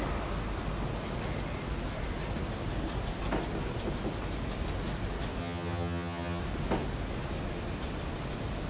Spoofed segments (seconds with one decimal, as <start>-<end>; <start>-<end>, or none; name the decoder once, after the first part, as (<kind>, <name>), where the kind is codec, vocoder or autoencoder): 5.4-6.4 (vocoder, HiFi-GAN)